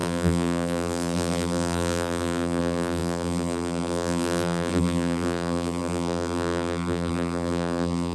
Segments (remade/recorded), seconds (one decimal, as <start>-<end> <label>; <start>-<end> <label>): 0.0-8.1 remade